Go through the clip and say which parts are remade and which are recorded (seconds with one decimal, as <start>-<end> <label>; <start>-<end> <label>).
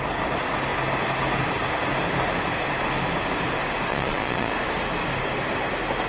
0.0-3.9 recorded; 3.9-4.5 remade; 4.5-6.1 recorded